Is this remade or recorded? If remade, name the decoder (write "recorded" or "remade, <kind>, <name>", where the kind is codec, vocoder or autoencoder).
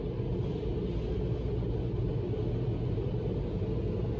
recorded